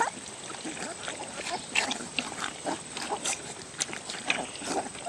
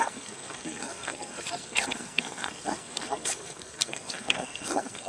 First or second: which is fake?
second